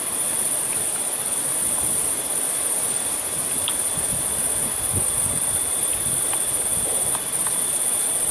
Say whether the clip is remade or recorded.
recorded